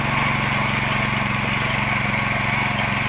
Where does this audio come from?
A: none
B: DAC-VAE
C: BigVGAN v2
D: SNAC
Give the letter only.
A